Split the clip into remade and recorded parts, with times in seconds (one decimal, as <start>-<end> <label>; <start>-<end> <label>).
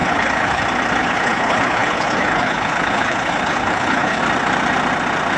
0.0-0.6 remade; 0.6-1.0 recorded; 1.0-4.2 remade; 4.2-5.4 recorded